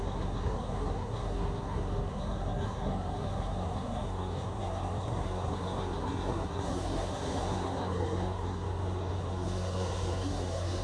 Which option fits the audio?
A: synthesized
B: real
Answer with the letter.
A